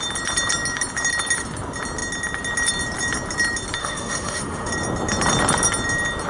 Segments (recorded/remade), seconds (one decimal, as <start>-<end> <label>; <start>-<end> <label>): 0.0-3.8 recorded; 3.8-4.7 remade; 4.7-6.3 recorded